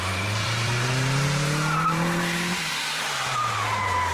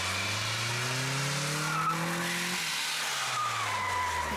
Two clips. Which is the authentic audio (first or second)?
second